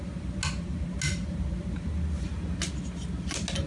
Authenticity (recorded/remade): recorded